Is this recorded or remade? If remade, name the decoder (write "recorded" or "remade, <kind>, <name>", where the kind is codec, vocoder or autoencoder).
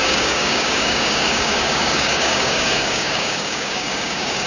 remade, codec, DAC